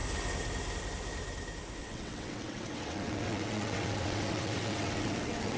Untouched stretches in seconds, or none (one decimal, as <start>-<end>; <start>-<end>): 0.0-1.8